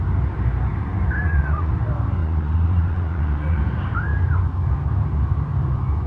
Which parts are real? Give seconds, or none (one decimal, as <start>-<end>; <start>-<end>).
0.0-1.2; 1.7-2.2; 3.6-6.1